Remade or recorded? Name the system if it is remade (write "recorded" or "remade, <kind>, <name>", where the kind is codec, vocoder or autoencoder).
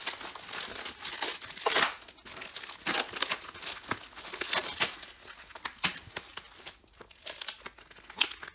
recorded